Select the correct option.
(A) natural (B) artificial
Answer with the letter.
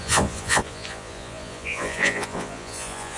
B